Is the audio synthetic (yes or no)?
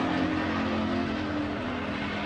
no